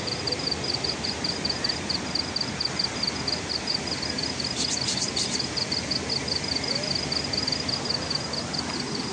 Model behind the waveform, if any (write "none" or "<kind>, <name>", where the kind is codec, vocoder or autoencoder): none